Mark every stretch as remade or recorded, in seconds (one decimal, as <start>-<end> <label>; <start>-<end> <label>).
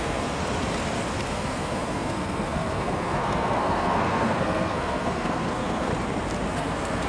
0.0-0.4 remade; 0.4-1.3 recorded; 1.3-5.9 remade; 5.9-6.5 recorded; 6.5-7.1 remade